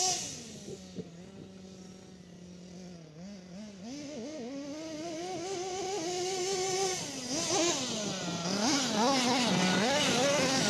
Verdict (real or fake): real